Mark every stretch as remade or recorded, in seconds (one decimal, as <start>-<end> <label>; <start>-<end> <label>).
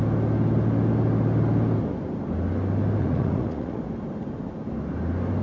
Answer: 0.0-3.0 recorded; 3.0-3.8 remade; 3.8-5.4 recorded